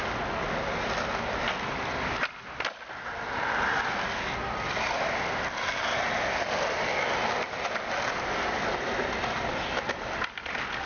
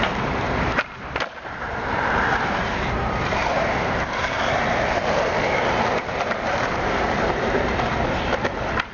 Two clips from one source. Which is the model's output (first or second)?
second